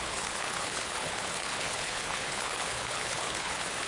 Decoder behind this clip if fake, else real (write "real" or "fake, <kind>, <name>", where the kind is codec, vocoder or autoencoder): fake, codec, HILCodec